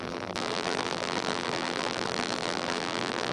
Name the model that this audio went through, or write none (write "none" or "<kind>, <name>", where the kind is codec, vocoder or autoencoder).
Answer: vocoder, BigVGAN v2